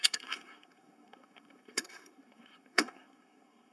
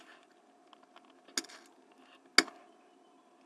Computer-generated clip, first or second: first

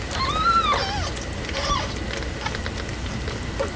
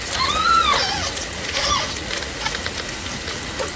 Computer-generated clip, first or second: second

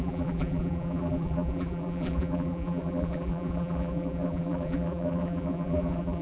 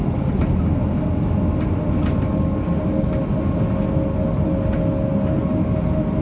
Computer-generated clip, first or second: first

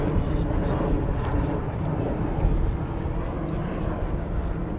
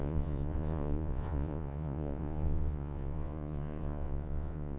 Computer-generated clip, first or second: second